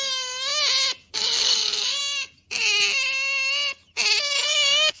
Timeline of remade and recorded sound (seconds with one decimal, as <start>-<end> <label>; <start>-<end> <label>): 0.0-0.5 remade; 0.5-1.1 recorded; 1.1-2.0 remade; 2.0-4.2 recorded; 4.2-5.0 remade